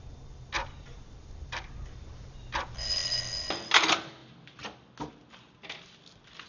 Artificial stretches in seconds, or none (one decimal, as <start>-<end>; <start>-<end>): none